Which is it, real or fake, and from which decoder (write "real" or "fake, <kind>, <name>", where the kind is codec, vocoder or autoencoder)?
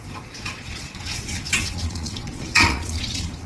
fake, vocoder, Vocos